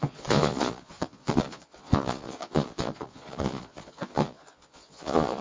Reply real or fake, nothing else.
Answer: fake